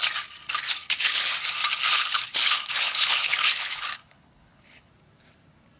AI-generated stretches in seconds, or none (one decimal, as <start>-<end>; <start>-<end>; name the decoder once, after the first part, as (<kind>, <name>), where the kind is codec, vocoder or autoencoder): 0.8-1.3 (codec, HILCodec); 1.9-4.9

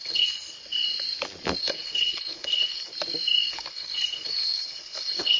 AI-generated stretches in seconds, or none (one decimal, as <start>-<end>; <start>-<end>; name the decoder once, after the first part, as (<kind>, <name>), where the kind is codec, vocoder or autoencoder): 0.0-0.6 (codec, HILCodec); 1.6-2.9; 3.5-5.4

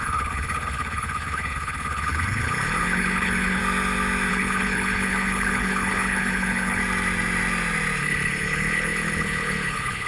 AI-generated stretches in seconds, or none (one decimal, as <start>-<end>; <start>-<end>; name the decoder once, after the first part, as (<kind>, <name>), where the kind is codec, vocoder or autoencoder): 0.0-3.6 (codec, HILCodec); 4.3-6.8; 8.0-10.1